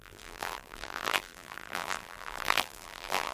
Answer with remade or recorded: remade